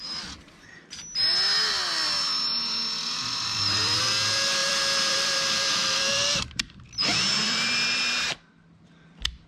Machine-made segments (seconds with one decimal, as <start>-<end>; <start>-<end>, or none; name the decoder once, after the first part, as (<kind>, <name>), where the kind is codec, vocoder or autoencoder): 3.0-4.0 (vocoder, BigVGAN v2); 4.6-8.3